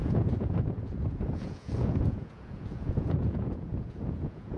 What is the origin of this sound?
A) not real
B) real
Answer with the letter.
A